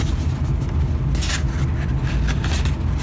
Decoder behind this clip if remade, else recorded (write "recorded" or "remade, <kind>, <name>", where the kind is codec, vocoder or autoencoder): recorded